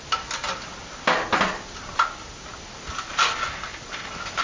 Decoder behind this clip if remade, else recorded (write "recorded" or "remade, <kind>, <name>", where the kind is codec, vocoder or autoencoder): recorded